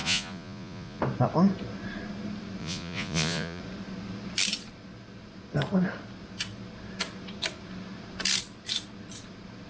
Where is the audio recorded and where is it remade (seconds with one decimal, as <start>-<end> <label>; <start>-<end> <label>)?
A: 0.0-1.0 remade; 1.0-2.6 recorded; 2.6-3.6 remade; 3.6-9.7 recorded